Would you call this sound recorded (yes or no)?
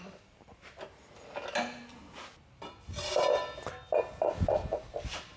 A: yes